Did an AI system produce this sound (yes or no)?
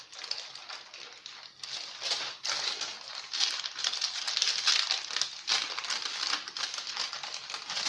no